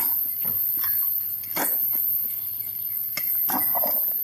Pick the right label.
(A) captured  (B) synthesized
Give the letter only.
A